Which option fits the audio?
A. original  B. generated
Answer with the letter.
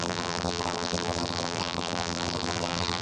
B